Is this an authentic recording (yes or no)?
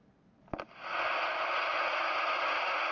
yes